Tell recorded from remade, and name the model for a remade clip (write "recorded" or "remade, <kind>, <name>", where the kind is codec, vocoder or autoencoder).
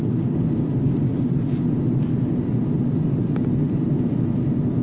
recorded